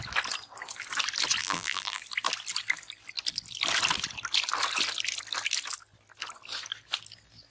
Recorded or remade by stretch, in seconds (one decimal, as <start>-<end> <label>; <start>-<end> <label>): 0.0-1.4 recorded; 1.4-2.0 remade; 2.0-7.5 recorded